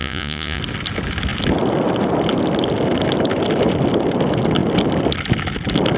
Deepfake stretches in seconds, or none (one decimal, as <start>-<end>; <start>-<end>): 0.0-0.6